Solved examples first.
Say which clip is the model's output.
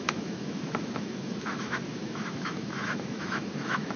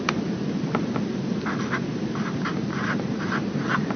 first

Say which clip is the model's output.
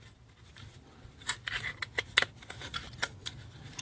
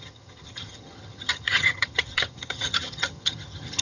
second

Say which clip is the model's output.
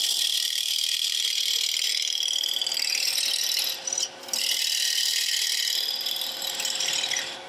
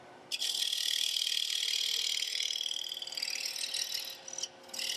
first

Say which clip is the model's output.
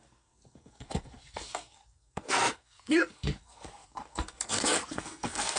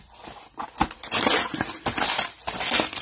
first